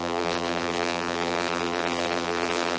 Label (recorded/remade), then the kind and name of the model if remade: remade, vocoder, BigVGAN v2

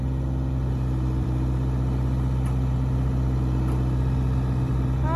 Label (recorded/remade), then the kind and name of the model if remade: recorded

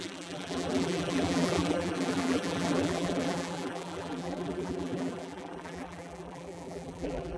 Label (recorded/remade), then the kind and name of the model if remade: remade, vocoder, BigVGAN v2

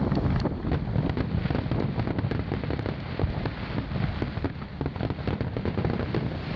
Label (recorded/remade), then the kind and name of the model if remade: recorded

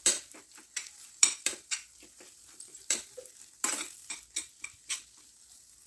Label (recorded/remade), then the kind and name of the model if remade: remade, vocoder, BigVGAN v2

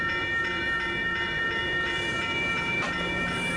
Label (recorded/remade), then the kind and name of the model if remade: remade, vocoder, BigVGAN v2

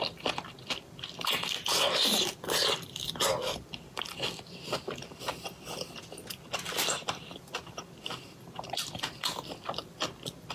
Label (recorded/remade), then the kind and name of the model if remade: remade, vocoder, BigVGAN v2